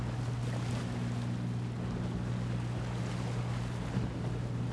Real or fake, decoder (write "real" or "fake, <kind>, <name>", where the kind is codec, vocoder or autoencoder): real